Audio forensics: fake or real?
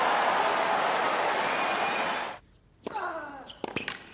real